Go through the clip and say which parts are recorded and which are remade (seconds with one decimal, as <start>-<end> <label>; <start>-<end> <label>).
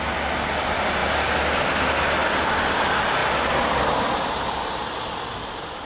0.0-5.9 recorded